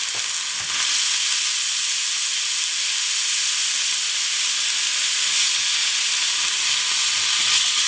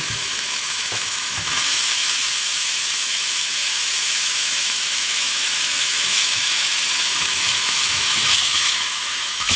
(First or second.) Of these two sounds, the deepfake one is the second